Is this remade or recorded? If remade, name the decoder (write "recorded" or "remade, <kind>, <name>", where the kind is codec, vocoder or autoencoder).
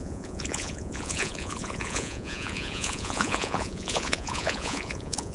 remade, vocoder, Vocos